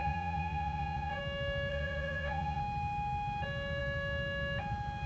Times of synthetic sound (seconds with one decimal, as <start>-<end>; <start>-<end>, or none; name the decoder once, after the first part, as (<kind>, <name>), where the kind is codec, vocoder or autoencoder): 0.0-1.2 (vocoder, Vocos); 1.7-2.6